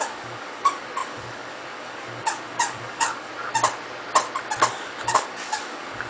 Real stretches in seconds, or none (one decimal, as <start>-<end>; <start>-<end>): 3.3-4.7

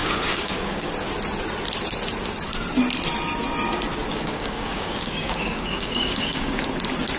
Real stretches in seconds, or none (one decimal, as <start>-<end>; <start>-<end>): 0.9-4.1; 6.6-7.2

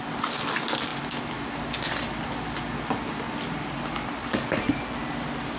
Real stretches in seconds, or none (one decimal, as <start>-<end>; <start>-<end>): 0.0-4.2; 4.8-5.6

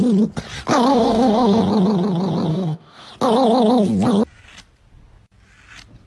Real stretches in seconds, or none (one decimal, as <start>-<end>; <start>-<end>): 0.0-0.9; 1.6-2.5; 3.1-6.1

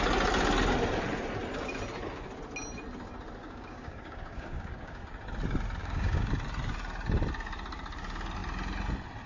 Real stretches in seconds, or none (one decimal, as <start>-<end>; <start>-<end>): 0.0-3.4; 5.0-5.8; 6.3-9.3

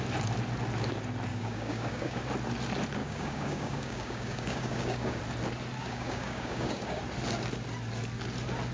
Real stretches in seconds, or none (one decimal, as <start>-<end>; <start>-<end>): 0.0-1.3; 2.2-3.0; 5.2-5.8; 7.0-8.7

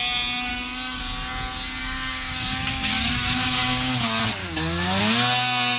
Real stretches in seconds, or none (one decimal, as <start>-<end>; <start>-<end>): 0.0-0.5; 1.0-1.8; 3.9-4.4; 5.0-5.8

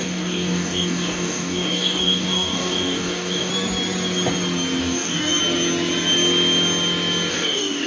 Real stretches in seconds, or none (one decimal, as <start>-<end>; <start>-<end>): 3.5-4.8; 5.4-7.3